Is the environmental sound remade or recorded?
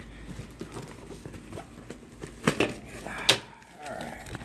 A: recorded